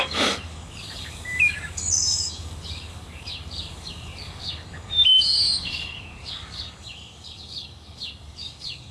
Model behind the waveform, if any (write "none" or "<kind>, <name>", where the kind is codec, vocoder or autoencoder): codec, DAC